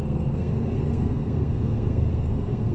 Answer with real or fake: fake